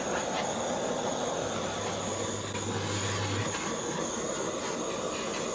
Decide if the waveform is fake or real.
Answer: real